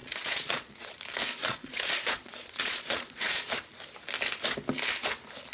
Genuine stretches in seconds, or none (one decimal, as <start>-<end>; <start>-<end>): 0.9-1.4; 3.4-5.5